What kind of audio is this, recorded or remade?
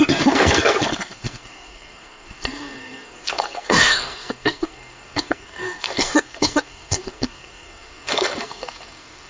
remade